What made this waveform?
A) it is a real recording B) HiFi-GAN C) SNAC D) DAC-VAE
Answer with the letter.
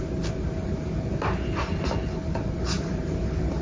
A